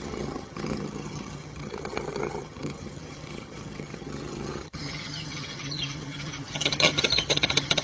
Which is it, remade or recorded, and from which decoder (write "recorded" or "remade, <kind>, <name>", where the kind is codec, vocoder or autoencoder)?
remade, vocoder, HiFi-GAN